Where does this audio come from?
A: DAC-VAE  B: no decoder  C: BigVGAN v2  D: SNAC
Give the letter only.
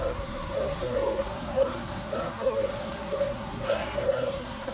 D